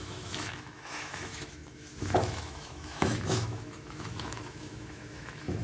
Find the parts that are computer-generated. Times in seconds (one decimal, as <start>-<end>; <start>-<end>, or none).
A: 0.0-5.6